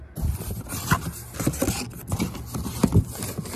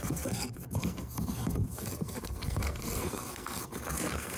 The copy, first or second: second